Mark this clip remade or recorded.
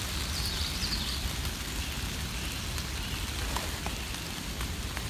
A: recorded